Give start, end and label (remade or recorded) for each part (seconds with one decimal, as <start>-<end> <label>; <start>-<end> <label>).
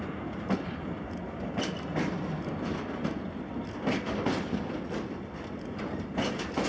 0.0-6.7 recorded